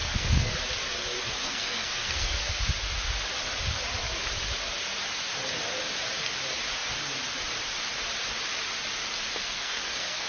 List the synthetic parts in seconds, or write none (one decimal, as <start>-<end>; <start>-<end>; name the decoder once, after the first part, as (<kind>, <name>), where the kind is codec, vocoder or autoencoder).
0.0-0.5 (codec, SNAC); 1.4-2.7; 9.4-10.3